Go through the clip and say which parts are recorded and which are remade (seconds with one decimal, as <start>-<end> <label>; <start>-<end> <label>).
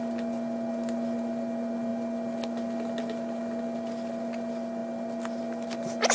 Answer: 0.0-6.1 recorded